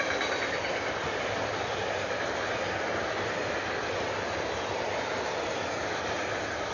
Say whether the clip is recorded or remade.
recorded